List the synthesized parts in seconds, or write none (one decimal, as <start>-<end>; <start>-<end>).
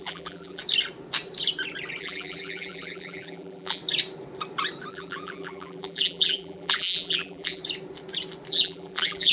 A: 0.0-0.6; 2.0-3.8; 4.9-7.6; 8.5-9.3